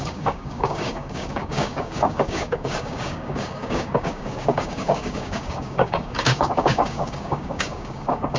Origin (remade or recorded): remade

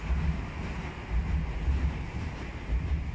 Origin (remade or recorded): recorded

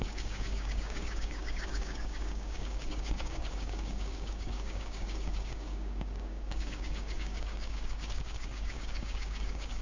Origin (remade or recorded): remade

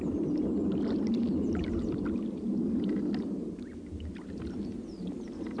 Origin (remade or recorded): recorded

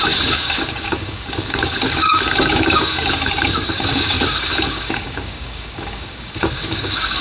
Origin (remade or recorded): remade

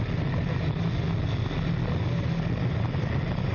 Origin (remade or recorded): recorded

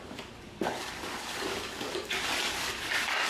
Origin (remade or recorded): remade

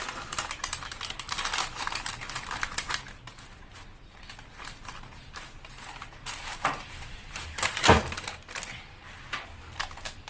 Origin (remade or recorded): recorded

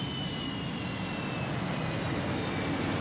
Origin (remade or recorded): recorded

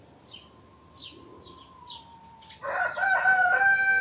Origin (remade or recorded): recorded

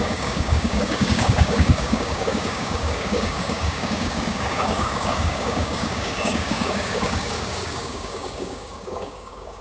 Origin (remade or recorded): remade